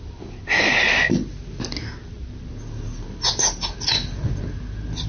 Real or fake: real